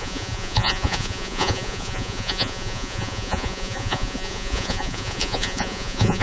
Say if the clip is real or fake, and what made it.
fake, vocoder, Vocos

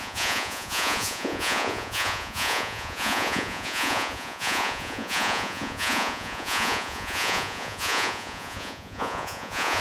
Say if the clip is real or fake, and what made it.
fake, vocoder, Vocos